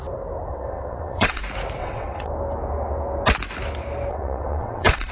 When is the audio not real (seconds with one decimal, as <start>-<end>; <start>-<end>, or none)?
0.5-1.4; 1.8-2.3; 4.1-5.1